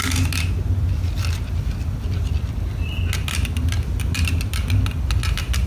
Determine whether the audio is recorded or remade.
recorded